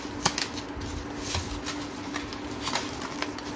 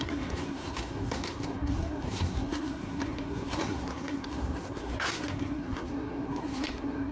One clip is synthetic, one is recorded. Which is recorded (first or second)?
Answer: first